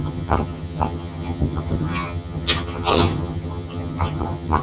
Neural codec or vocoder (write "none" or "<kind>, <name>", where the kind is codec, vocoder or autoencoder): vocoder, HiFi-GAN